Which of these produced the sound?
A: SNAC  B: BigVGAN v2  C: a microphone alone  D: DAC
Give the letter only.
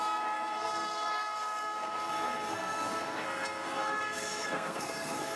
A